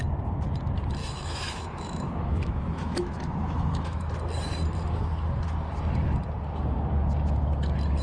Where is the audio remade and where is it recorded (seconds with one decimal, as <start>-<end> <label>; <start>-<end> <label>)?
0.0-1.0 recorded; 1.0-4.1 remade; 4.1-8.0 recorded